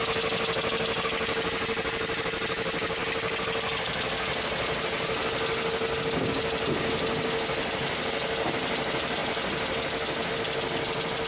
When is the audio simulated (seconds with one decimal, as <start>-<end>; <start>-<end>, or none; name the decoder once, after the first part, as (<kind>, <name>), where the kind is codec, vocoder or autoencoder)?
none